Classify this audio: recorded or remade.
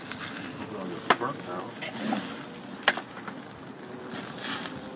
recorded